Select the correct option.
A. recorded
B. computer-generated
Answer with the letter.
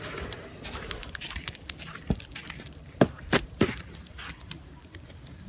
A